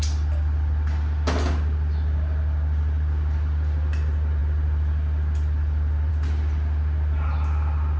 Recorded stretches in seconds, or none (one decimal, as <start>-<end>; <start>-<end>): 0.0-8.0